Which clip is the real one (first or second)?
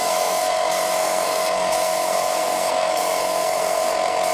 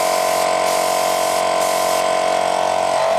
second